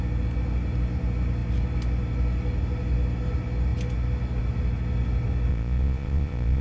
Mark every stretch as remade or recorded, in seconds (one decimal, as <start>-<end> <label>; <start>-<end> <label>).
0.0-5.5 recorded; 5.5-6.6 remade